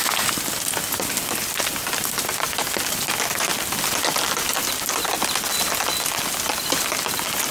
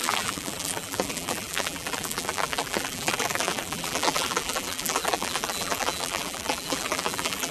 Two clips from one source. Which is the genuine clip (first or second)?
first